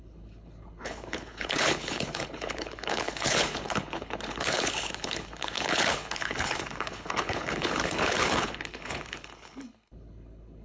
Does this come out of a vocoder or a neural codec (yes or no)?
yes